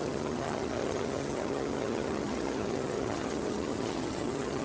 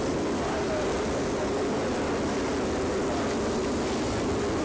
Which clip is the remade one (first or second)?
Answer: first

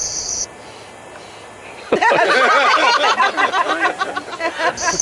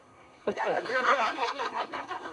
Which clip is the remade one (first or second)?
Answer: second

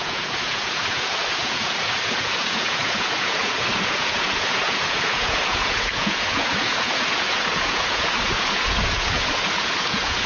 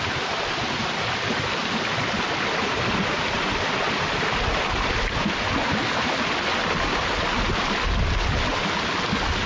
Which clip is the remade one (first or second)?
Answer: first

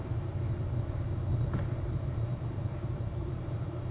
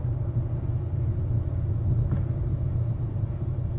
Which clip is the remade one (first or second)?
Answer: first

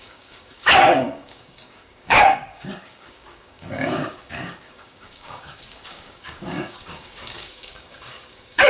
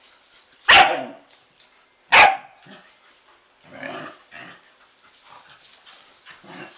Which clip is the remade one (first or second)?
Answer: first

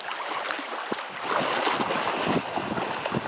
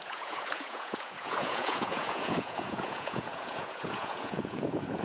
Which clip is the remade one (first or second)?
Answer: second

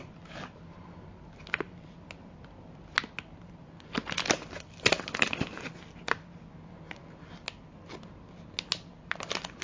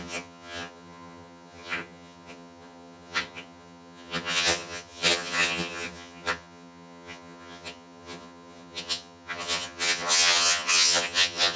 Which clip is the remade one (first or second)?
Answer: second